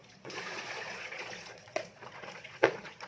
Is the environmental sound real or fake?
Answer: fake